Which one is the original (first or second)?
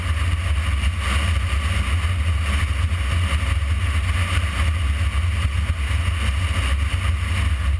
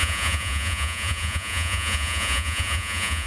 first